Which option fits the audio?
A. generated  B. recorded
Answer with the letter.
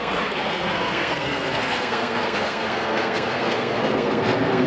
A